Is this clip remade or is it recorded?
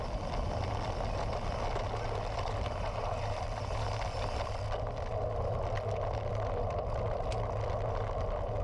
recorded